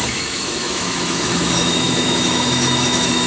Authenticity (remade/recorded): remade